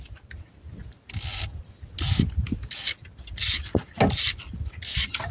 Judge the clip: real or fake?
real